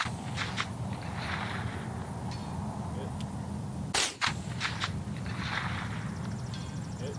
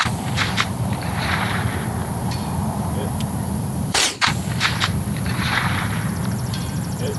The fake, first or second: second